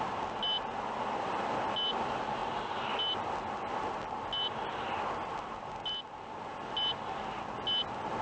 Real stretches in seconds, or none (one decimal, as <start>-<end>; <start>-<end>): 0.0-8.2